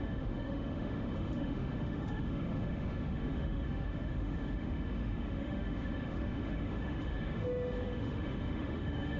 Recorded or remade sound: remade